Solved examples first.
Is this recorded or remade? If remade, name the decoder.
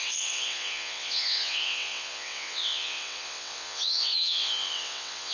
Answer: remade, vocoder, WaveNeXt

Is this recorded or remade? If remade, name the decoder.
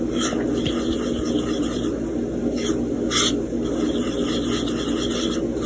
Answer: recorded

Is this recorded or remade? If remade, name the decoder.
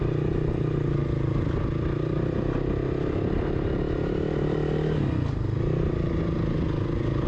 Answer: recorded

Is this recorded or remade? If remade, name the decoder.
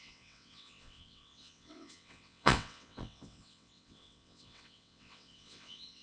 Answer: remade, vocoder, WaveNeXt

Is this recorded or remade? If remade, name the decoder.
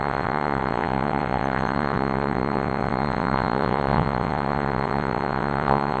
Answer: remade, vocoder, WaveNeXt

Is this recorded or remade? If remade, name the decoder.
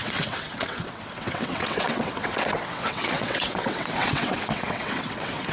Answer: remade, vocoder, WaveNeXt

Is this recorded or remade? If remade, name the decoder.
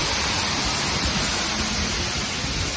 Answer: recorded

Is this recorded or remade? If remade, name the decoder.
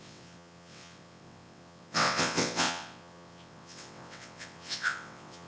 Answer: remade, vocoder, WaveNeXt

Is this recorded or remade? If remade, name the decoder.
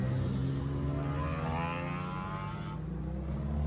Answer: recorded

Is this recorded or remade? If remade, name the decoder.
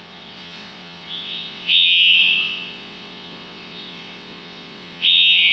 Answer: remade, vocoder, WaveNeXt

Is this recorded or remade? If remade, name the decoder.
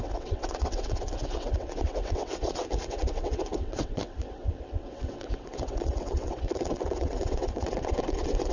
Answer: remade, vocoder, WaveNeXt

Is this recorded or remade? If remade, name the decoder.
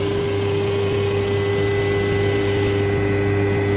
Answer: recorded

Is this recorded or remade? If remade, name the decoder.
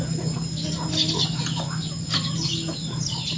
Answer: recorded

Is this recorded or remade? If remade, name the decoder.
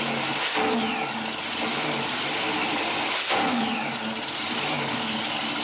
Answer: recorded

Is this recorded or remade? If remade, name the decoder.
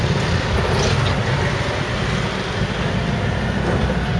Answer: recorded